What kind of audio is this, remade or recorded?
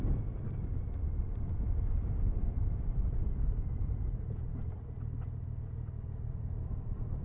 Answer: remade